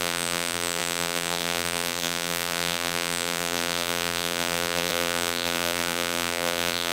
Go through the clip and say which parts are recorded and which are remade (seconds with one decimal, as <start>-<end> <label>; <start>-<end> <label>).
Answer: 0.0-6.9 remade